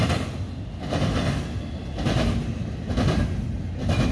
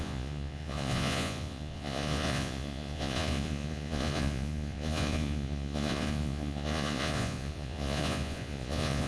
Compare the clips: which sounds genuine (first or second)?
first